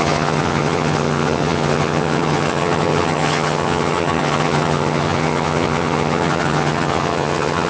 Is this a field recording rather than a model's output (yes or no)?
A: no